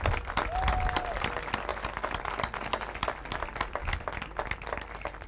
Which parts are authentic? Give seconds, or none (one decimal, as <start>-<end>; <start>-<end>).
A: 0.0-5.3